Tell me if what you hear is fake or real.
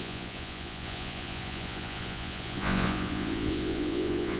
fake